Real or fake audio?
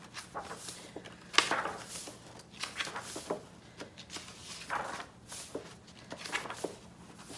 real